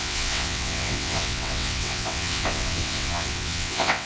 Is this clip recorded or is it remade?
remade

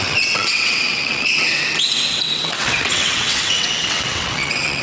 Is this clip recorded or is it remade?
remade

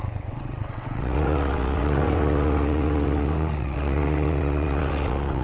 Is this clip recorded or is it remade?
remade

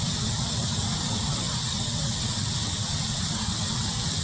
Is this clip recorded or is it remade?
remade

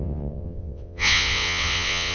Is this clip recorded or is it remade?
remade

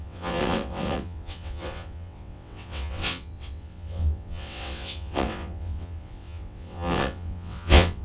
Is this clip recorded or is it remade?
remade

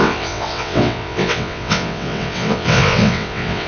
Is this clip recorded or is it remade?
remade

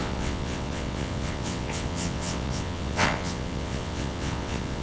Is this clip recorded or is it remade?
remade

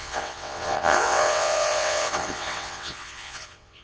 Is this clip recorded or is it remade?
remade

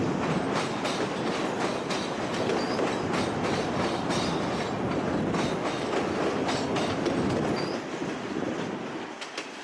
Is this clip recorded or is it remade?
recorded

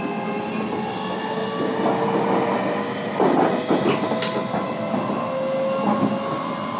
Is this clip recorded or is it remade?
recorded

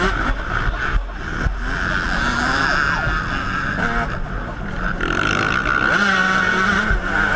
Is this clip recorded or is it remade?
recorded